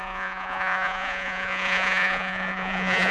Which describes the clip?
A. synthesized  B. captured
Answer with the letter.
A